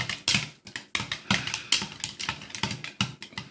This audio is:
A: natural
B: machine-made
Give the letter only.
A